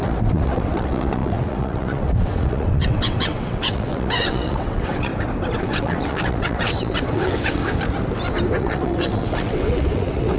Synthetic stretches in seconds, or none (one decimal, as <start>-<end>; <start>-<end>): 0.0-5.1; 5.6-7.6; 8.6-10.4